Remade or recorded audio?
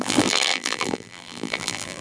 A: remade